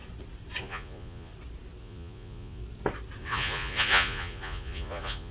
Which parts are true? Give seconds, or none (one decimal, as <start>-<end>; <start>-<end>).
0.0-0.6; 1.3-1.8; 2.6-3.2